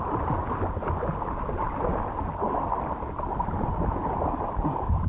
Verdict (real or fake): real